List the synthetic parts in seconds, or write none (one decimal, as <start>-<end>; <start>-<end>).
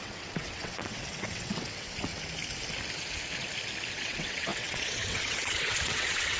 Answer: 0.0-2.1; 3.9-6.4